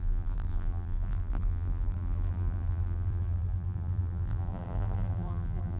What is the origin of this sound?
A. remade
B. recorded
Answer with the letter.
A